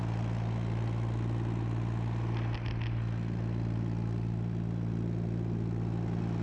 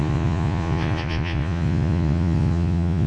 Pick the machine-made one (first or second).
second